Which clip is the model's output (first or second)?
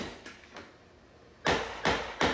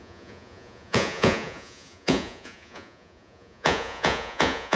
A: second